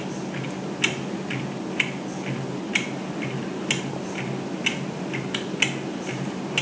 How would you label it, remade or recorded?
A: recorded